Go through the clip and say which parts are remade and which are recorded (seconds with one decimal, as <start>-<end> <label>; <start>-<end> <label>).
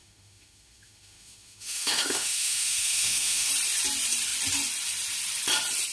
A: 0.0-3.5 remade; 3.5-5.9 recorded